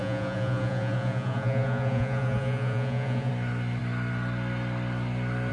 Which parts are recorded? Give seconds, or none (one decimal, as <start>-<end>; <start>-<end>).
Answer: 3.3-5.5

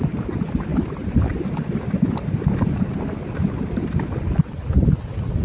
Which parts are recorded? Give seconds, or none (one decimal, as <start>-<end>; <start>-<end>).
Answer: 0.0-5.4

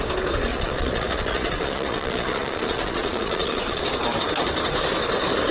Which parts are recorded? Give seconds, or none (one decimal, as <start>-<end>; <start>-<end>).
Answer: 0.0-0.5; 3.8-5.5

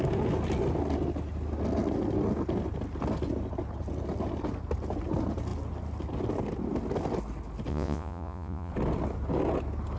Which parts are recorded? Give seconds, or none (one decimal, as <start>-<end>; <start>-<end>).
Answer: 0.0-7.7; 8.7-10.0

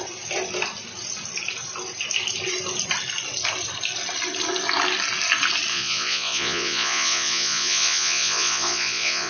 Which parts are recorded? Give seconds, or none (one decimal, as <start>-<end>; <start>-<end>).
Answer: 0.0-5.7

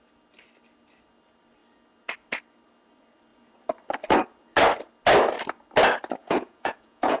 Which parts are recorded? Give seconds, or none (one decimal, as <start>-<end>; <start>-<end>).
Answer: 0.0-6.2

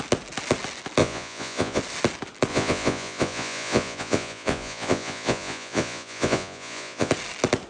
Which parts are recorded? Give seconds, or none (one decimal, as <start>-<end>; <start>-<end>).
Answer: 0.0-1.0; 1.8-2.5; 7.1-7.7